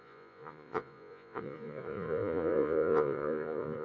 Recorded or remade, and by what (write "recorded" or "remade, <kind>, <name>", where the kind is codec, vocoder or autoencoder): remade, vocoder, Vocos